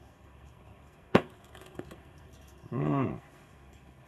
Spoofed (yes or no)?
yes